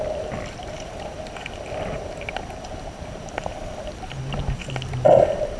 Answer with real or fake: real